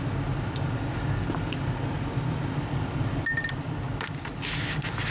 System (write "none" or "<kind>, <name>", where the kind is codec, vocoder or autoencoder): none